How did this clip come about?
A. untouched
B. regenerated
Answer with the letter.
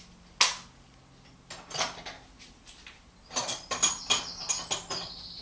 A